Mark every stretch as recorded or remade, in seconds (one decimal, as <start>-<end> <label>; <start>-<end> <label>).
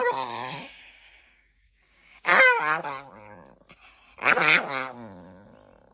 0.0-2.3 remade; 2.3-5.9 recorded